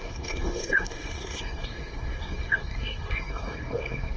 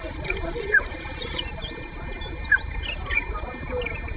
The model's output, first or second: first